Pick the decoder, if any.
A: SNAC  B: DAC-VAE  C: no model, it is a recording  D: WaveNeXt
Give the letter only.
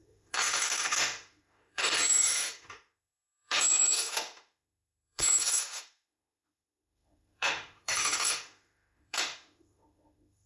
B